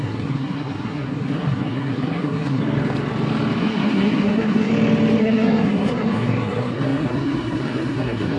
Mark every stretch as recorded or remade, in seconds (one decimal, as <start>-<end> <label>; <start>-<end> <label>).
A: 0.0-2.6 remade; 2.6-3.6 recorded; 3.6-4.7 remade; 4.7-5.2 recorded; 5.2-8.4 remade